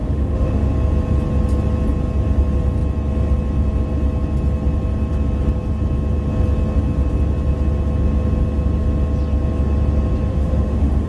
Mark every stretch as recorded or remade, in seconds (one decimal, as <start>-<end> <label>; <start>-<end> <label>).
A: 0.0-0.7 remade; 0.7-10.3 recorded; 10.3-11.1 remade